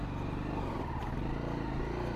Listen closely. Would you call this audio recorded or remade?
recorded